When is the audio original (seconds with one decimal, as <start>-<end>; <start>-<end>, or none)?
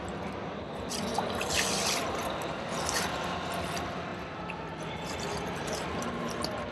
0.0-6.7